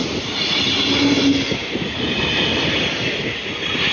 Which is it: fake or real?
real